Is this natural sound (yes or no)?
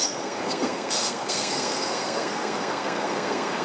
no